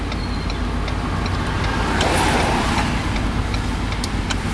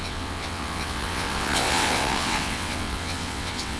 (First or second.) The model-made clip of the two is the second